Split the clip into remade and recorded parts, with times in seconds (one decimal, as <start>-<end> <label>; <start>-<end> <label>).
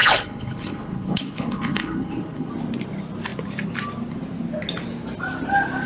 0.0-2.5 remade; 2.5-5.9 recorded